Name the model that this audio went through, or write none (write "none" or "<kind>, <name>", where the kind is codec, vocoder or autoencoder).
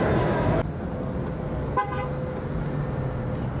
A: none